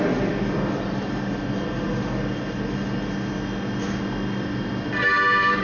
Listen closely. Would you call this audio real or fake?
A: real